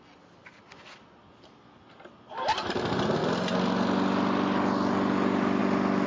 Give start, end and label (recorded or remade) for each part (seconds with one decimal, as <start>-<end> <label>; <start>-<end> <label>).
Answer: 0.0-6.1 recorded